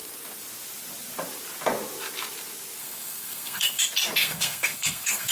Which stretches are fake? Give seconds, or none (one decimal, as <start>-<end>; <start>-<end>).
2.8-3.8; 4.2-5.3